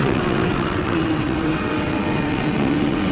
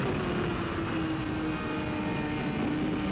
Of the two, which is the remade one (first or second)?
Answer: first